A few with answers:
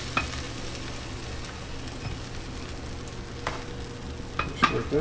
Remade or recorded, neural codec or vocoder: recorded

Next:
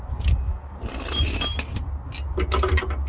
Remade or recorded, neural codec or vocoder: recorded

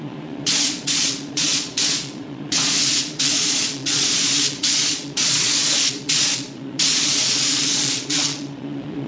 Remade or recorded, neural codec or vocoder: remade, vocoder, Vocos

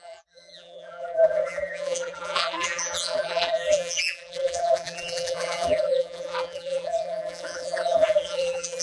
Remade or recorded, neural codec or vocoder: remade, vocoder, BigVGAN v2